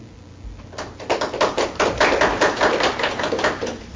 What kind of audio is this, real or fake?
real